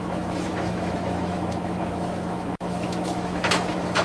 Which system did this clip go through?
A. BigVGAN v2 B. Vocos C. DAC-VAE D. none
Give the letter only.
C